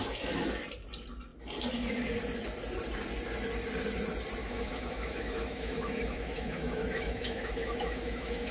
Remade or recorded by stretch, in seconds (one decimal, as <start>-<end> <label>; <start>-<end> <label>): 0.0-4.4 recorded; 4.4-8.5 remade